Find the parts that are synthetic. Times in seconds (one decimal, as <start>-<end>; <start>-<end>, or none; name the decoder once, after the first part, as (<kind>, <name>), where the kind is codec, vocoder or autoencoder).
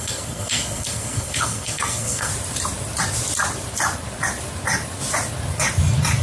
0.0-2.3 (codec, SNAC)